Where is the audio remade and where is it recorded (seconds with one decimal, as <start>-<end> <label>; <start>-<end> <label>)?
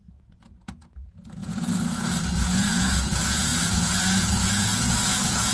0.0-5.5 remade